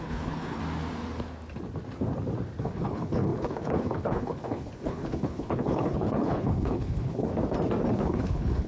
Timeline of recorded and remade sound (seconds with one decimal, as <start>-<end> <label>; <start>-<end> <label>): 0.0-0.6 remade; 0.6-2.6 recorded; 2.6-7.3 remade; 7.3-7.9 recorded; 7.9-8.7 remade